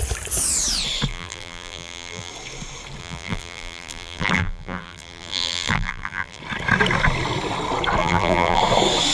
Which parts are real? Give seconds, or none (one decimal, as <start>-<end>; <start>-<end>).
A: 0.0-1.1; 2.3-3.0; 6.4-8.0; 8.6-9.1